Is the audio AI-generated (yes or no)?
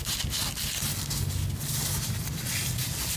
no